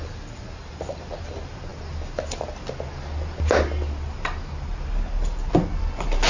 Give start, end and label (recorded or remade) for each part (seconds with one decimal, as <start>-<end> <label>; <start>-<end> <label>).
0.0-6.3 recorded